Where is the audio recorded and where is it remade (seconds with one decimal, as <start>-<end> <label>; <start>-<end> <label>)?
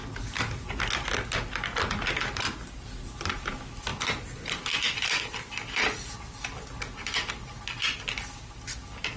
0.0-9.2 recorded